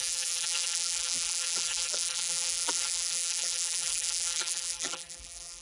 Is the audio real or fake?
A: fake